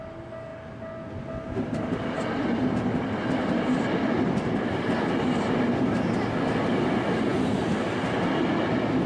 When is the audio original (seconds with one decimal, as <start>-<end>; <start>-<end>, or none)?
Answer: 0.0-9.1